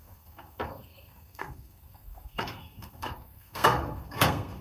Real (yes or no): no